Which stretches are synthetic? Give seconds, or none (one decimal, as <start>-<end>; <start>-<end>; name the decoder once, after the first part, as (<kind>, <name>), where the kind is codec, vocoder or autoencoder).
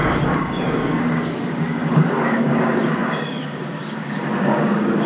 0.0-5.1 (codec, DAC)